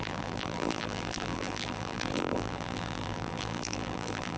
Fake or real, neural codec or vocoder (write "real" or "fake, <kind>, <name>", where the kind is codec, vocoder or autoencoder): fake, vocoder, BigVGAN v2